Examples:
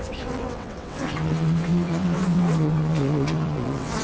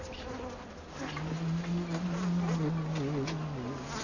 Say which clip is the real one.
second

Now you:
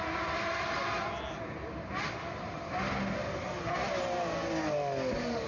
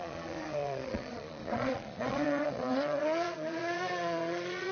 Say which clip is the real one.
first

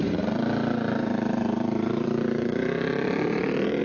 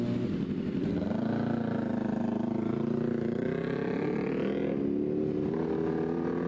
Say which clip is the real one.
second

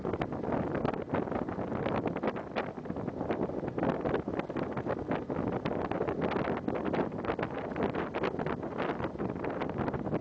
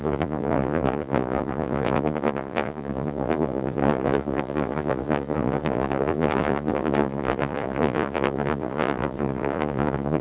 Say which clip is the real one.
first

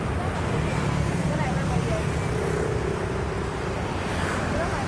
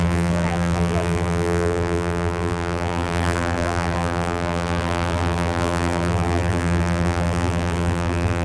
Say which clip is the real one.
first